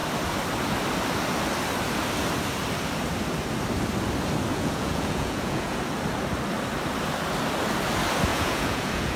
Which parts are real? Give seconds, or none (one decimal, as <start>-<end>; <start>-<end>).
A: 0.0-4.5; 5.8-8.3